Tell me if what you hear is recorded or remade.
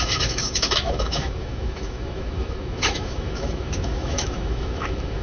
remade